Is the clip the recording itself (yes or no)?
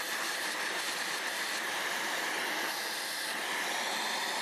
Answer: yes